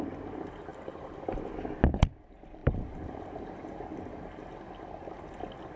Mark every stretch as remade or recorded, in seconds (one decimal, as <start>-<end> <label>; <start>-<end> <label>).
0.0-0.7 recorded; 0.7-1.2 remade; 1.2-2.6 recorded; 2.6-3.4 remade; 3.4-3.9 recorded; 3.9-4.5 remade; 4.5-5.8 recorded